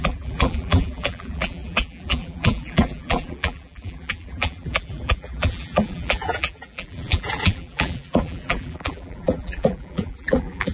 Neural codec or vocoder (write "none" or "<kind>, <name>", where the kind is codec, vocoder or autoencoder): vocoder, BigVGAN v2